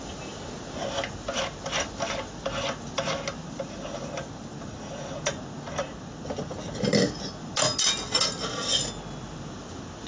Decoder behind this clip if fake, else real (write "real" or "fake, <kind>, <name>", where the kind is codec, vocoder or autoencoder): real